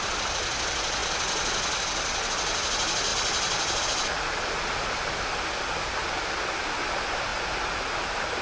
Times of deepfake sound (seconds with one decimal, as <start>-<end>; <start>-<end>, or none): none